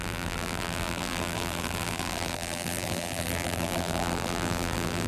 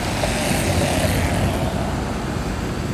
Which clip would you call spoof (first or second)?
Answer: first